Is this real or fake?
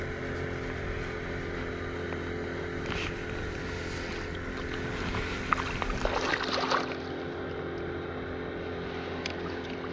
real